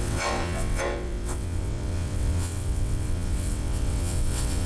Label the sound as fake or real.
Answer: fake